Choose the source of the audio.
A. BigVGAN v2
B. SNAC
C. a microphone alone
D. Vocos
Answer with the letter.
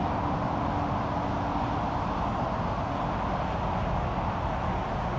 C